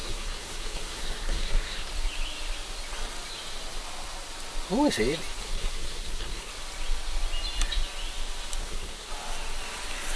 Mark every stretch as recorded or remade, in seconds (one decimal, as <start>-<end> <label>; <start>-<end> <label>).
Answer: 0.0-1.9 remade; 1.9-5.4 recorded; 5.4-6.5 remade; 6.5-8.6 recorded; 8.6-9.1 remade; 9.1-10.2 recorded